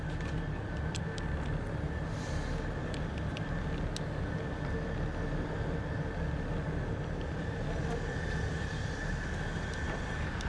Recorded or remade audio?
recorded